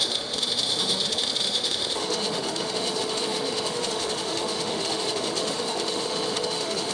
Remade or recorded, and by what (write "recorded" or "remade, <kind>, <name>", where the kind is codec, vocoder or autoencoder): remade, autoencoder, DAC-VAE